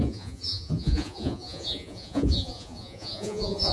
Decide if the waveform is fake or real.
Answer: fake